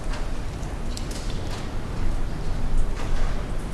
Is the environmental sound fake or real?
real